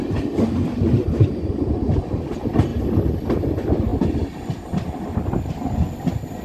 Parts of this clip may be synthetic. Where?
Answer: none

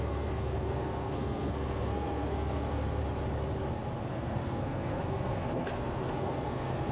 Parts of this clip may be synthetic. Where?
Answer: 0.0-3.0 (codec, SNAC); 4.1-6.9

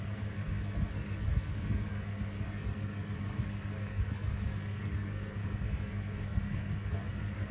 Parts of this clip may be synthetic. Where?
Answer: 0.0-7.5 (codec, SNAC)